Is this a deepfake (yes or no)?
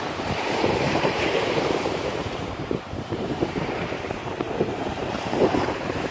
yes